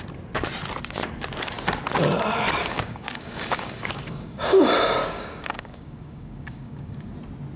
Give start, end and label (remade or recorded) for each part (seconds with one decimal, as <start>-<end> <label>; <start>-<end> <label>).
0.0-2.6 recorded; 2.6-4.6 remade; 4.6-5.0 recorded; 5.0-7.1 remade; 7.1-7.6 recorded